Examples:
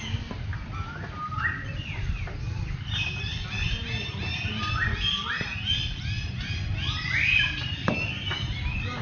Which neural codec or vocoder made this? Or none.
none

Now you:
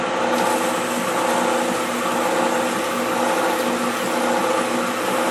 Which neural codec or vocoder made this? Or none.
none